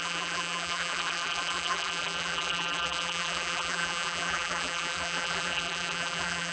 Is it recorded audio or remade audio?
remade